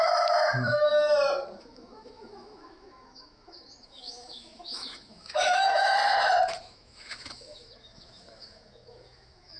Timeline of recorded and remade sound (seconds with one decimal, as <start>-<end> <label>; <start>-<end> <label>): 0.0-0.9 remade; 0.9-1.6 recorded; 1.6-6.0 remade; 6.0-6.6 recorded; 6.6-9.6 remade